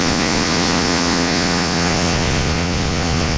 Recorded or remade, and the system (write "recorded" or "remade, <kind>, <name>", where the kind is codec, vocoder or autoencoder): remade, vocoder, Vocos